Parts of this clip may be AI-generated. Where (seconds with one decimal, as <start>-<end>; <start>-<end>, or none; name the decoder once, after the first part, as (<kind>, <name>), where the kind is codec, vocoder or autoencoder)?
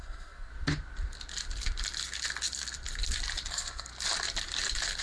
0.0-0.5 (codec, SNAC); 3.5-3.9